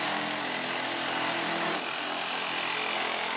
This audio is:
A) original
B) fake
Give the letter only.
A